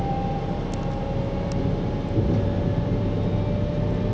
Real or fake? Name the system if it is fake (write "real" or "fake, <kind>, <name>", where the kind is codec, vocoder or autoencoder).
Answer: real